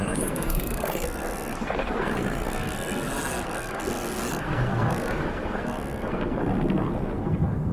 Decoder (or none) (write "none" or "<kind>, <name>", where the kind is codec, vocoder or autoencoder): codec, SNAC